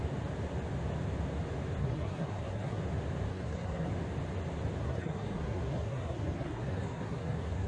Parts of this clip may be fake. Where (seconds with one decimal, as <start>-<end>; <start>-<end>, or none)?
1.8-2.8; 3.3-3.9; 4.8-7.7